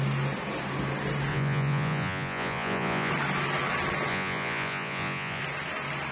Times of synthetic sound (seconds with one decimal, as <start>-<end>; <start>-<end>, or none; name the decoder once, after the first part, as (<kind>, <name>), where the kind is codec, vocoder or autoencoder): 1.3-3.1 (vocoder, Vocos); 4.1-5.4